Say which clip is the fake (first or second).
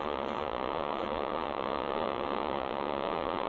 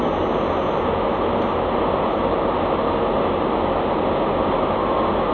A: first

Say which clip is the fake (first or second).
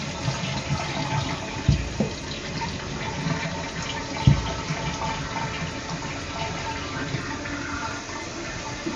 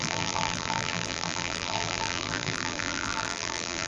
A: second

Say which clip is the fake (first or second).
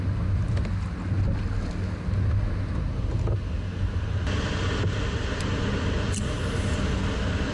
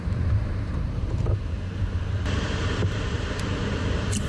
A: second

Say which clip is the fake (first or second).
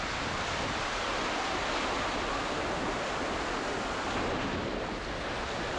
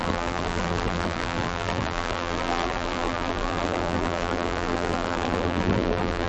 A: second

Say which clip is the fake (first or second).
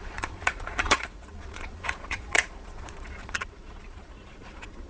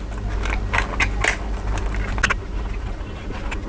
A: first